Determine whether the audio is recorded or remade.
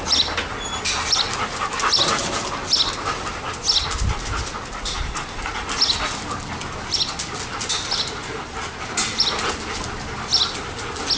recorded